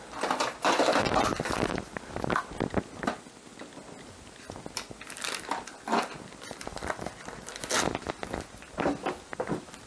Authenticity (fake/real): real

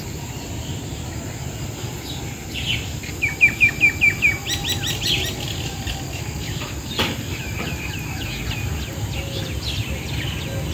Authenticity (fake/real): real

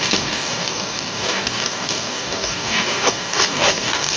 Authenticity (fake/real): fake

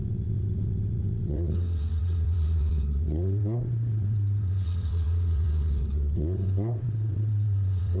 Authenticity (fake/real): fake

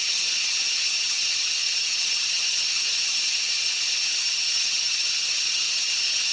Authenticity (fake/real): fake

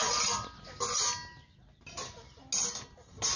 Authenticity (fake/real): real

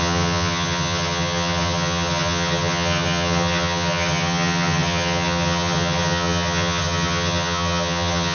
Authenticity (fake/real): fake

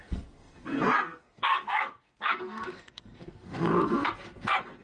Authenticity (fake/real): fake